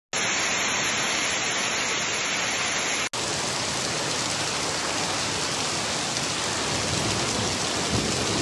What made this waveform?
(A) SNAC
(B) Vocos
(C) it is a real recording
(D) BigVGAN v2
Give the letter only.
C